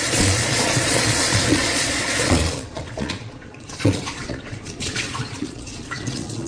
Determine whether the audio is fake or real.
fake